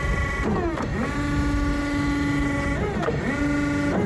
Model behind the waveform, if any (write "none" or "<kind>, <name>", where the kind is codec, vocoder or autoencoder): none